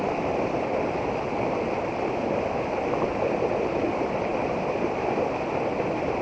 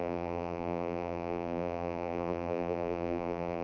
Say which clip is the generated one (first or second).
second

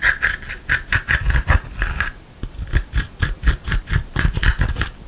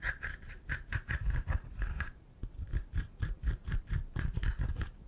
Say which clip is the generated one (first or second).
second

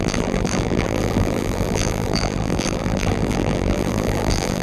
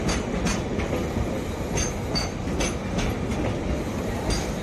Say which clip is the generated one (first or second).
first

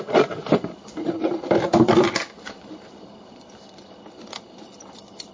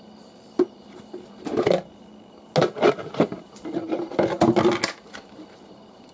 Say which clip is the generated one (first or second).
first